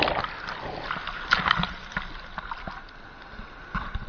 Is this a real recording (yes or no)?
yes